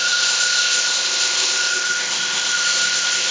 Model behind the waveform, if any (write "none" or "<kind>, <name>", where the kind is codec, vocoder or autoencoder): codec, ZipCodec